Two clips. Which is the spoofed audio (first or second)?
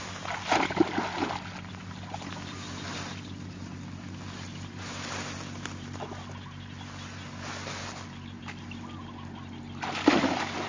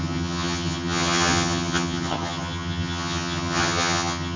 second